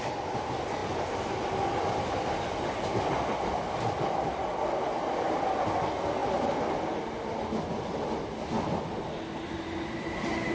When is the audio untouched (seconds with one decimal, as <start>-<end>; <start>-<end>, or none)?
0.0-10.5